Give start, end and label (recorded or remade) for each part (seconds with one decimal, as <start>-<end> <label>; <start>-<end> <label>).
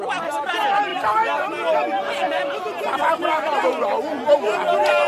0.0-5.1 recorded